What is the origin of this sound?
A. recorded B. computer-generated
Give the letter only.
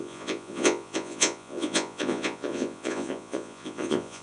B